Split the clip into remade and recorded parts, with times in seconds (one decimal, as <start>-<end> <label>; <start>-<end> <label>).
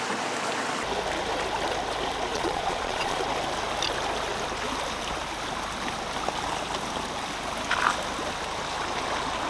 0.0-2.3 recorded; 2.3-3.2 remade; 3.2-9.5 recorded